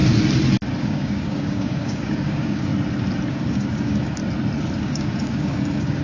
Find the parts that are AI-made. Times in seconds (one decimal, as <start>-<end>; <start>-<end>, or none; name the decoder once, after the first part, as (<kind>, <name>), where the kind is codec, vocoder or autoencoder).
0.8-2.7 (codec, DAC); 3.3-4.2; 4.8-6.0